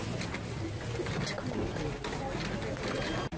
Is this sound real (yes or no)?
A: yes